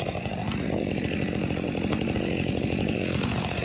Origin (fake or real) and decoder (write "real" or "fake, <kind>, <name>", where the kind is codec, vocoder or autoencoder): fake, vocoder, Vocos